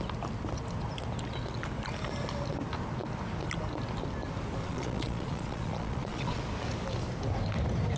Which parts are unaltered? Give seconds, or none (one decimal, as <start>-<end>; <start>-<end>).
0.0-4.6; 6.4-8.0